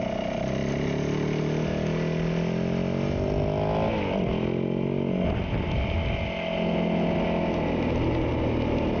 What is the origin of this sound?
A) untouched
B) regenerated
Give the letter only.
A